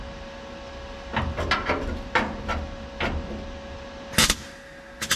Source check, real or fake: real